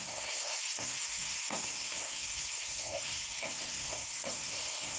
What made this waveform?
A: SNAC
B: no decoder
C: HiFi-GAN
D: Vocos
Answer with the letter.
A